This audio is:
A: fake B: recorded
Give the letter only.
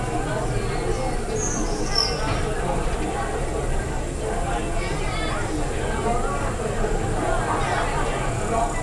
B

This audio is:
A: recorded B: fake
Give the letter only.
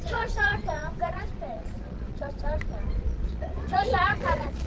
B